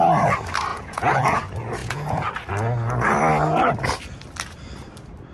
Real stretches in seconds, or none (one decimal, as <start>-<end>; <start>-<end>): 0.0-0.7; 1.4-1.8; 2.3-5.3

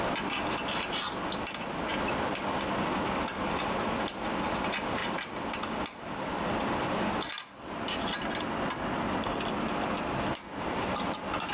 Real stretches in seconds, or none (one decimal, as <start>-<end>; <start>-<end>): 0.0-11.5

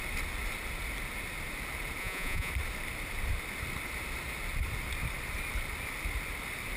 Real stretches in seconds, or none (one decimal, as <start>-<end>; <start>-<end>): 0.0-2.0; 2.5-6.8

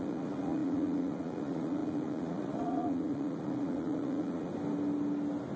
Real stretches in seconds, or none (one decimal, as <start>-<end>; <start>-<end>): 4.5-5.6

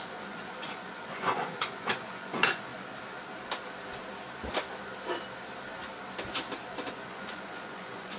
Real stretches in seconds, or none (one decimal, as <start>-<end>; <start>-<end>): 2.7-6.9